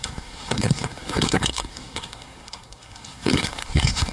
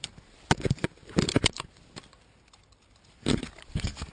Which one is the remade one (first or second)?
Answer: first